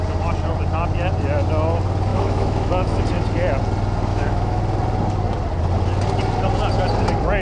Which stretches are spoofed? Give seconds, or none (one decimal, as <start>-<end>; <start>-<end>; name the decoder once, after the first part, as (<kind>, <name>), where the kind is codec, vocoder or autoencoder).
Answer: 2.1-3.0 (autoencoder, DAC-VAE); 4.1-4.6

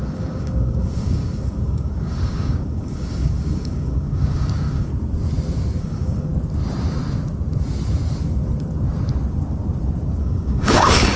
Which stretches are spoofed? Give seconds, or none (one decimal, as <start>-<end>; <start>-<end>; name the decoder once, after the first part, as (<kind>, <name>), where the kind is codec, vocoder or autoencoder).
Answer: 0.0-4.9 (codec, DAC); 5.8-6.3; 10.2-11.2

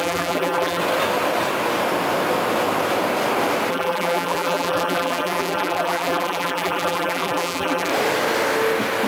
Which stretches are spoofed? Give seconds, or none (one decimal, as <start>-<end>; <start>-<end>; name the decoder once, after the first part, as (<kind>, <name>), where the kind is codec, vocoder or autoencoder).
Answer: 0.0-0.8 (vocoder, BigVGAN v2); 3.7-7.9

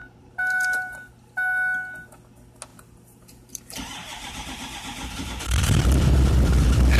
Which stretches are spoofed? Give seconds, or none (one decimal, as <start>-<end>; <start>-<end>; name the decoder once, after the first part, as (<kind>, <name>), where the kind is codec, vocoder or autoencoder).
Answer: 0.0-1.1 (vocoder, BigVGAN v2); 2.7-7.0

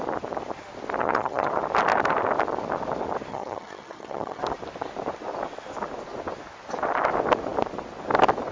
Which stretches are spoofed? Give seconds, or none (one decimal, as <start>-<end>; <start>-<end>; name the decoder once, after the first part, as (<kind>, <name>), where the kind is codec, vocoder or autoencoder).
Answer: 1.0-1.5 (vocoder, HiFi-GAN); 3.3-4.4